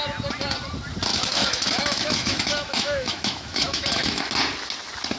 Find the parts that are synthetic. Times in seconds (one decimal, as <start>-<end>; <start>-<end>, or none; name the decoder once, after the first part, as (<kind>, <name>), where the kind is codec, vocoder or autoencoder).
1.1-4.2 (autoencoder, DAC-VAE)